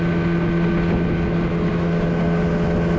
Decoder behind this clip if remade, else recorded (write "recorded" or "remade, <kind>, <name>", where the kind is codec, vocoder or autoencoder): recorded